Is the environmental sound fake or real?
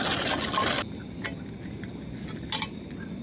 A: real